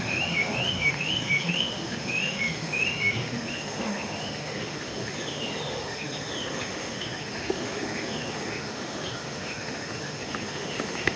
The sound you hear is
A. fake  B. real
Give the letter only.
A